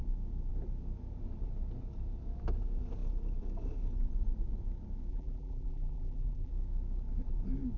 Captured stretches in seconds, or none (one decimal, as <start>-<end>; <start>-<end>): 0.0-5.1; 6.5-7.8